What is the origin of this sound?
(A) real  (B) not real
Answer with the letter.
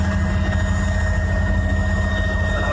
A